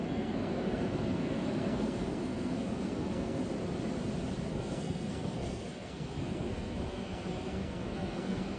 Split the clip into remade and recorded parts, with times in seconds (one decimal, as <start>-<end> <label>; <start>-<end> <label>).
0.0-3.4 remade; 3.4-4.5 recorded; 4.5-8.6 remade